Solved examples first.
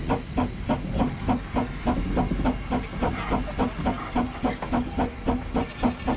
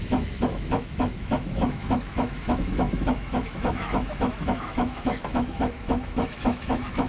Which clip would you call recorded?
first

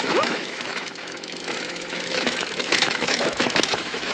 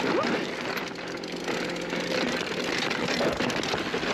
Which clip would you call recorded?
second